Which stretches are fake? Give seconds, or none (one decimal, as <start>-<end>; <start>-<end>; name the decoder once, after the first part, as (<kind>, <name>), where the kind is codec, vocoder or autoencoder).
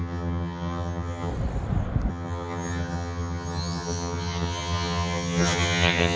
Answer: 0.0-1.3 (vocoder, HiFi-GAN); 2.1-6.2